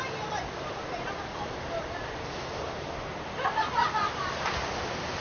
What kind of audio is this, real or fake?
real